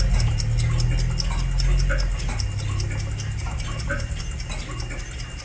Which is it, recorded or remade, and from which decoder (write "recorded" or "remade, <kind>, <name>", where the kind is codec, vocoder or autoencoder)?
recorded